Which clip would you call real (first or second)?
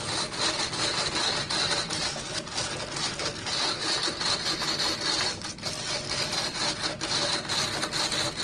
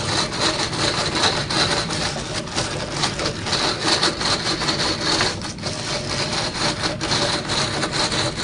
first